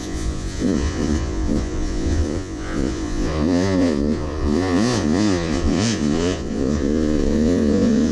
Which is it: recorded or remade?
remade